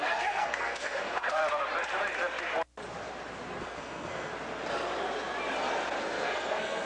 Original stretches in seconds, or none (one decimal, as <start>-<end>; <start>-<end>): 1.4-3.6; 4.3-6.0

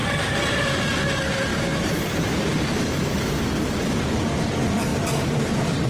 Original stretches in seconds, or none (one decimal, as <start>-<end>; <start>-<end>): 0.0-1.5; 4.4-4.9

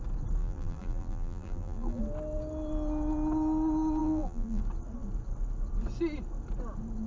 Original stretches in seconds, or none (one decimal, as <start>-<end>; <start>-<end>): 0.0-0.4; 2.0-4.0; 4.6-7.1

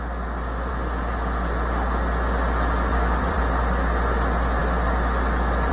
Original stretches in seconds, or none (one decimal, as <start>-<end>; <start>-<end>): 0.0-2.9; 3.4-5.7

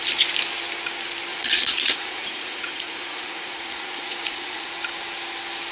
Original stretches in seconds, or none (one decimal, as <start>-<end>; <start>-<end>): 0.0-1.3; 4.7-5.7

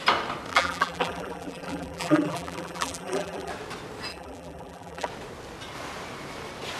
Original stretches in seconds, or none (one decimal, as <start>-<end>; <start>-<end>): 0.0-0.5; 3.5-4.1; 5.1-6.8

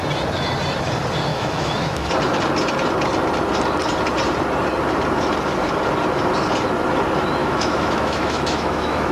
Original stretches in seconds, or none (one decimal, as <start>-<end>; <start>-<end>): 0.0-1.3; 2.1-7.4